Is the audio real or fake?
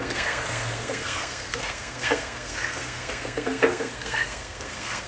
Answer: fake